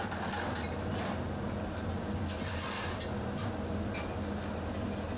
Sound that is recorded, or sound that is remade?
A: recorded